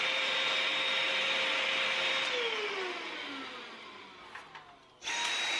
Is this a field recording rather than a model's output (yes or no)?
no